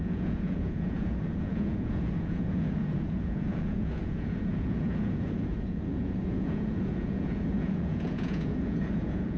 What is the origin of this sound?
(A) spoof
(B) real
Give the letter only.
A